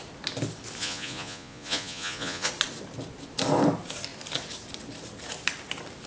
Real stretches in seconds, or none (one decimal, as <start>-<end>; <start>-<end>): 0.0-0.8; 2.5-6.1